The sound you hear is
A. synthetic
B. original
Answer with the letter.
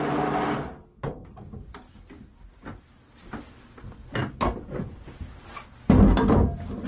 B